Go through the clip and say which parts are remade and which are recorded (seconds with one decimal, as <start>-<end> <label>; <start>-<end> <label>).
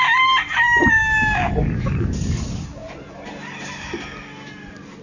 0.0-1.0 recorded; 1.0-1.5 remade; 1.5-5.0 recorded